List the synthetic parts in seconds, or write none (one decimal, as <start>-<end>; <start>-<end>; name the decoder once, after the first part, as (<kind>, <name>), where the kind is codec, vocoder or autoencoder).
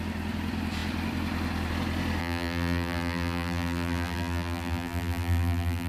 2.2-5.9 (vocoder, BigVGAN v2)